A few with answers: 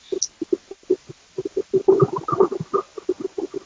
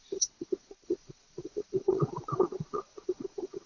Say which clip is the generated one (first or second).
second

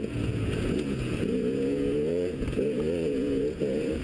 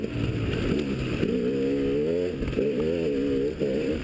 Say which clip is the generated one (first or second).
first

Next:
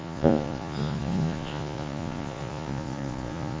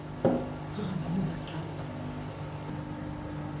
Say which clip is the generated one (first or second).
first